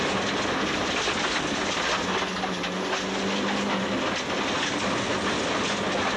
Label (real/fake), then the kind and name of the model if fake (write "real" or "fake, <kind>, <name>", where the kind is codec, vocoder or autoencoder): real